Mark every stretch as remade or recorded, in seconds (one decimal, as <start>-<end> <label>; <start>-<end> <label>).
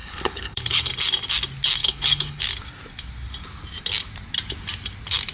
0.0-0.9 remade; 0.9-1.8 recorded; 1.8-2.4 remade; 2.4-5.3 recorded